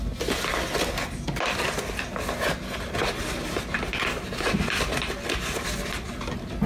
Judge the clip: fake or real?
real